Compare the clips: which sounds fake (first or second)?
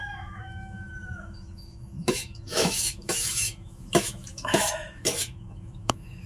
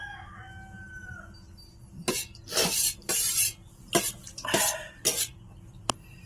first